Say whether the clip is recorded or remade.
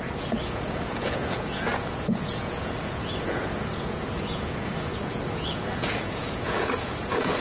remade